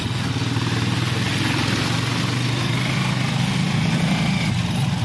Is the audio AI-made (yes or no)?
no